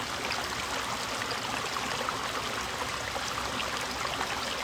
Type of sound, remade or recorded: recorded